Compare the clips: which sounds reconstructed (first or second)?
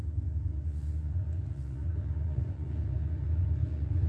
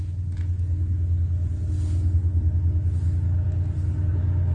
first